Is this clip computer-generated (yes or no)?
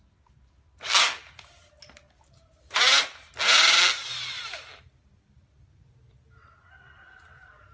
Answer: no